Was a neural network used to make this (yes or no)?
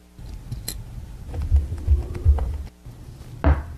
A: no